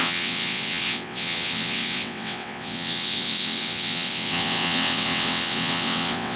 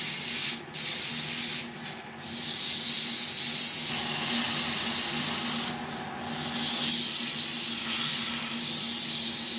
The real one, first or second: second